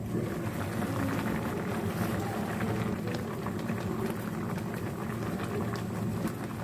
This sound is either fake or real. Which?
real